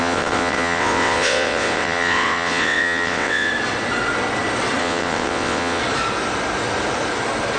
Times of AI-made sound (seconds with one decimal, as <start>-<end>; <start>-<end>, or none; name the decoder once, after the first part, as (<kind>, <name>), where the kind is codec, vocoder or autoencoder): 0.0-3.5 (vocoder, WaveNeXt); 4.8-5.8